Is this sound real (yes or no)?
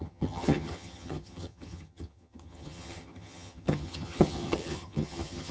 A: no